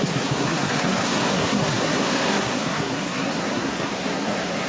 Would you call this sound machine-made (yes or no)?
yes